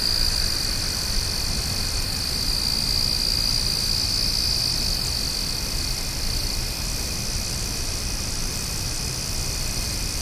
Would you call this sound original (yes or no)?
yes